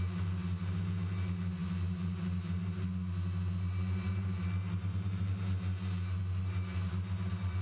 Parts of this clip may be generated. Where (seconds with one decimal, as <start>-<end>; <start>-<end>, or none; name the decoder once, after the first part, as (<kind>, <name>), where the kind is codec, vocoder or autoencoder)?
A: none